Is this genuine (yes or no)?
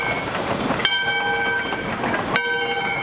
yes